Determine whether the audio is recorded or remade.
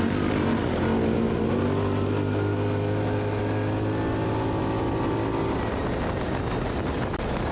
recorded